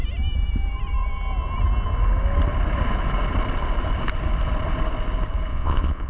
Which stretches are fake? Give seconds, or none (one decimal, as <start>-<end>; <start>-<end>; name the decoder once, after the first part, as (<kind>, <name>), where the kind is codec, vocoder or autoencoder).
5.5-6.1 (vocoder, Vocos)